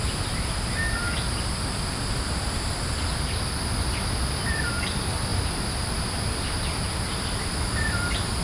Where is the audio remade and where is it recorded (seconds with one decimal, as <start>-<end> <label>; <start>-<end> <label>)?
0.0-8.4 recorded